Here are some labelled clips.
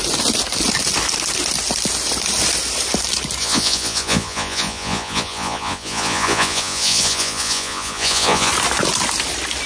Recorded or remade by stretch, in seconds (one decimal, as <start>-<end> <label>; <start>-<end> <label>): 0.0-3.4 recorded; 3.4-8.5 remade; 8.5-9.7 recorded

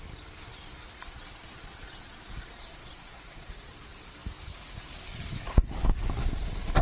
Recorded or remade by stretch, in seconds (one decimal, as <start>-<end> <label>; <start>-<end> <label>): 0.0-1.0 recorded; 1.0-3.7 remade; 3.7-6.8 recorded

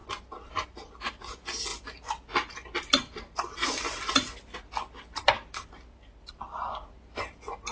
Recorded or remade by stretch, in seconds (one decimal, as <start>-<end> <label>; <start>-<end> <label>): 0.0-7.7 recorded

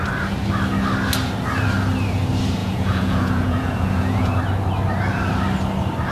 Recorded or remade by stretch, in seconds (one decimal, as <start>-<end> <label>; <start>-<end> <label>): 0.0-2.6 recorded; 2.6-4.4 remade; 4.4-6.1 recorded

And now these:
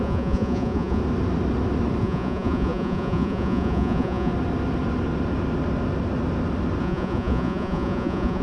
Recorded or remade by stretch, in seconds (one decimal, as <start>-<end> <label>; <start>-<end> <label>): 0.0-1.0 remade; 1.0-2.0 recorded; 2.0-4.3 remade; 4.3-6.8 recorded; 6.8-8.4 remade